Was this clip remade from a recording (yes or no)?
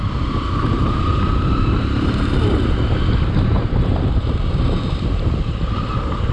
yes